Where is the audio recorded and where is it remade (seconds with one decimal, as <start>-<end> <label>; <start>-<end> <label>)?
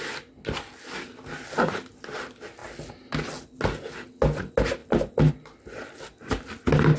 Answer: 0.0-7.0 recorded